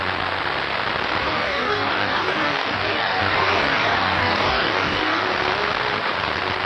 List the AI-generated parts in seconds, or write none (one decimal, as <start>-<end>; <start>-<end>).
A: 1.2-5.2